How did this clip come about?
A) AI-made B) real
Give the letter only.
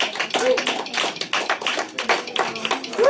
B